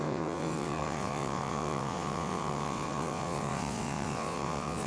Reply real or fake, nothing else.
fake